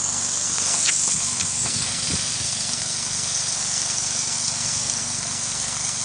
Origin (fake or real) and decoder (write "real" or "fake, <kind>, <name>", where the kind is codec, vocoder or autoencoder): fake, codec, SNAC